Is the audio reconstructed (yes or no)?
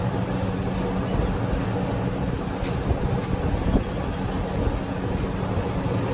no